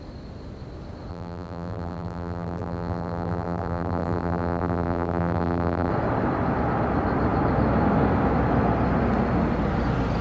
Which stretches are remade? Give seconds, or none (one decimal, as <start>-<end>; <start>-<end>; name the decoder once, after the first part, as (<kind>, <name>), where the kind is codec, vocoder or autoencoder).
1.1-5.9 (vocoder, BigVGAN v2)